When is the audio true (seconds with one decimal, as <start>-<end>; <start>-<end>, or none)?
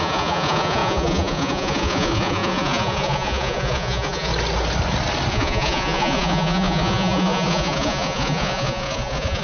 4.3-5.3